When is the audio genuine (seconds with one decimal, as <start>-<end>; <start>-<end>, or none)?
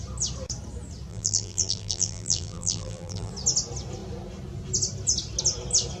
0.0-1.1; 3.3-6.0